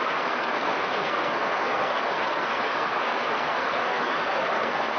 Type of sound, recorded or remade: remade